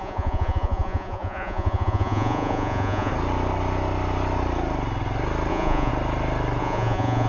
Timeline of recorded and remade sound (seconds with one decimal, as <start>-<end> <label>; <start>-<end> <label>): 0.0-3.1 remade; 3.1-5.5 recorded; 5.5-5.9 remade; 5.9-6.6 recorded; 6.6-7.3 remade